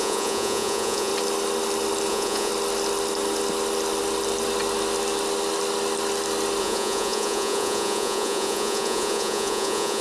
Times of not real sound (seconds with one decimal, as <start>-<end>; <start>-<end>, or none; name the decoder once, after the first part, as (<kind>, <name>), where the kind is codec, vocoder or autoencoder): 0.0-1.1 (vocoder, Vocos); 2.1-2.5; 6.6-10.0